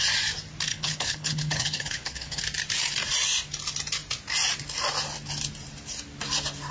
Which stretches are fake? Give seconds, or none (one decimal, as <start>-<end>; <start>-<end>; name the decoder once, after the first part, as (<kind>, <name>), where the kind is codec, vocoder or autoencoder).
0.7-2.4 (codec, HILCodec)